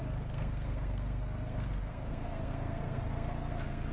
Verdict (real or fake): fake